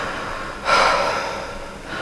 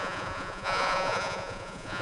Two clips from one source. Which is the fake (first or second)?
second